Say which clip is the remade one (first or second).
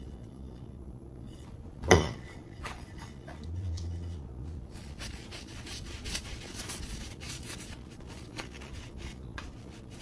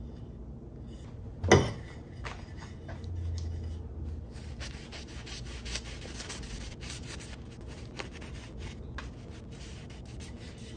first